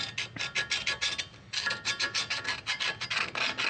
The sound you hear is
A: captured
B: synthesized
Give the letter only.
A